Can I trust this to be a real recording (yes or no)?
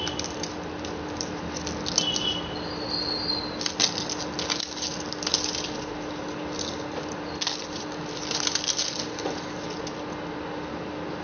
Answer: yes